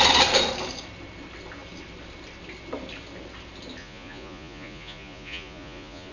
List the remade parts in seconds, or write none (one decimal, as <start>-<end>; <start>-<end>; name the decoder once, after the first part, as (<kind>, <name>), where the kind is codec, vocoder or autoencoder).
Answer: 3.8-6.1 (vocoder, Vocos)